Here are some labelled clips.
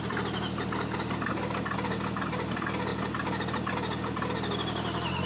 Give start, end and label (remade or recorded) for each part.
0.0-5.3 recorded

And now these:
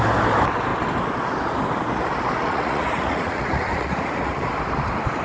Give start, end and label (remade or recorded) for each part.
0.0-2.4 recorded; 2.4-4.4 remade; 4.4-5.2 recorded

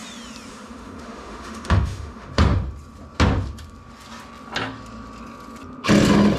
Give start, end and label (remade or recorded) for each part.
0.0-0.5 recorded; 0.5-2.3 remade; 2.3-6.4 recorded

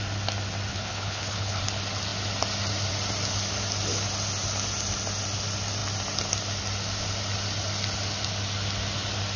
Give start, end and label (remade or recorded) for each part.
0.0-0.7 recorded; 0.7-1.6 remade; 1.6-9.4 recorded

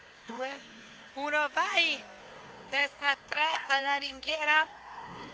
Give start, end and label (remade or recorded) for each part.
0.0-1.1 remade; 1.1-2.2 recorded; 2.2-5.3 remade

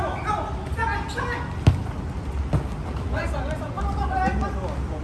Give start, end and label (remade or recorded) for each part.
0.0-5.0 recorded